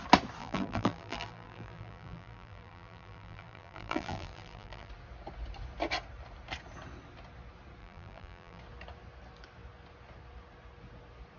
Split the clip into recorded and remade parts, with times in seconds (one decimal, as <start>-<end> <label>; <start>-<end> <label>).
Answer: 0.0-0.4 recorded; 0.4-4.9 remade; 4.9-7.8 recorded; 7.8-8.6 remade; 8.6-11.4 recorded